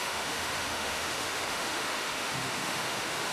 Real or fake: fake